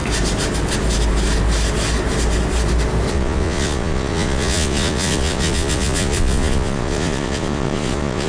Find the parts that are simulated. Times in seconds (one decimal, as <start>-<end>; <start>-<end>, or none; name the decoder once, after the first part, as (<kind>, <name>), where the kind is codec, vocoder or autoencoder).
3.1-8.3 (vocoder, Vocos)